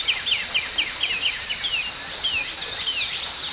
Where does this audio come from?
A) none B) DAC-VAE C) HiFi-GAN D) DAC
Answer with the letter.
A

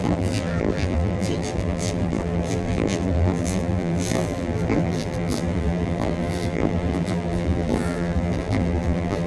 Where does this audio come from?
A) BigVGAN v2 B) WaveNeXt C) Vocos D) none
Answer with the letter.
A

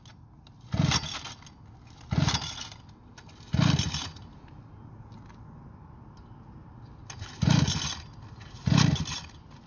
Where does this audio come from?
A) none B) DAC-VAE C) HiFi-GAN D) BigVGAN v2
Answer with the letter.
A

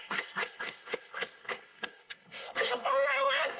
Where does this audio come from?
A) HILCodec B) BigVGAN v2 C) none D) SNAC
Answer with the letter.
D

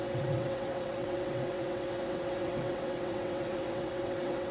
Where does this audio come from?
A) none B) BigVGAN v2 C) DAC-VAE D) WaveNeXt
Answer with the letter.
D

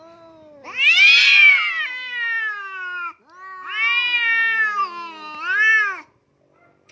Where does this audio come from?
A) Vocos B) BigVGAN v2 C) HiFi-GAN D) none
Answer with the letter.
D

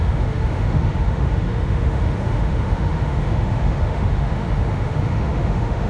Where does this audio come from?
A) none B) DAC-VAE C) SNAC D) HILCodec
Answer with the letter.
B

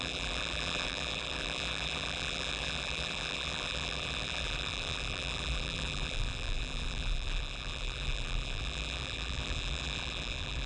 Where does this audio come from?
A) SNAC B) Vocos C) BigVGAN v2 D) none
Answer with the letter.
C